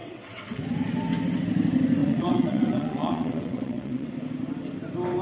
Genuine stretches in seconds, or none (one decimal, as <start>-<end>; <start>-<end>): 0.6-2.0; 4.1-5.2